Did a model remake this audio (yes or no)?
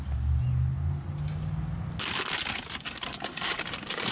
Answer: no